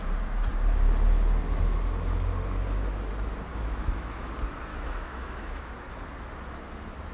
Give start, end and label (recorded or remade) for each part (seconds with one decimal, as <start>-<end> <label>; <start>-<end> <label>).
0.0-3.5 recorded; 3.5-4.3 remade; 4.3-4.7 recorded; 4.7-5.7 remade; 5.7-7.1 recorded